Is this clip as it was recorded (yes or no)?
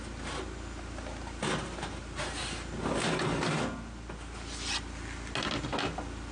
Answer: yes